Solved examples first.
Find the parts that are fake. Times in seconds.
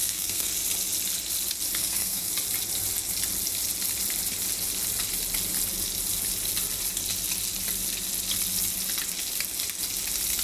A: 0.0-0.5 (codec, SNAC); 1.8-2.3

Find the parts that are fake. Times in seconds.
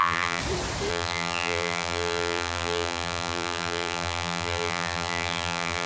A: 0.0-0.4 (vocoder, BigVGAN v2); 0.9-5.9